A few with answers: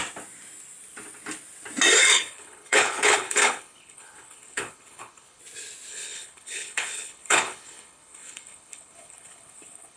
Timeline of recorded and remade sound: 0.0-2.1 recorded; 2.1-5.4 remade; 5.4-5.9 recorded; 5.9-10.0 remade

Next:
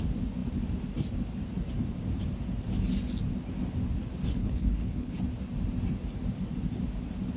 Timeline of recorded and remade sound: 0.0-4.3 recorded; 4.3-5.2 remade; 5.2-7.4 recorded

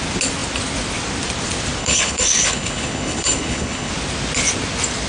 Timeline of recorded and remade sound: 0.0-1.8 recorded; 1.8-3.9 remade; 3.9-5.1 recorded

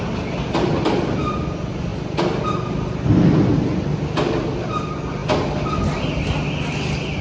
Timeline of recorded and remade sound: 0.0-7.2 recorded

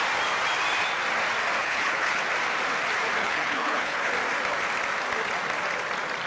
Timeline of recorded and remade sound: 0.0-1.6 recorded; 1.6-2.2 remade; 2.2-3.2 recorded; 3.2-4.1 remade; 4.1-6.3 recorded